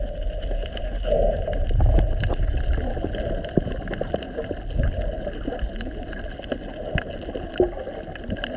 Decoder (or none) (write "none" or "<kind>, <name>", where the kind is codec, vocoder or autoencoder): none